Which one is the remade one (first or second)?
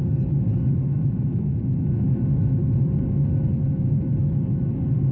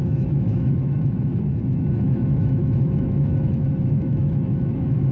second